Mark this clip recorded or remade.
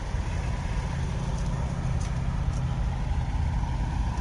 recorded